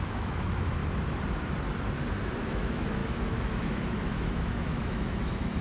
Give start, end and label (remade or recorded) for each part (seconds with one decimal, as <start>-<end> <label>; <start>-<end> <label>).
0.0-0.8 remade; 0.8-2.4 recorded; 2.4-5.6 remade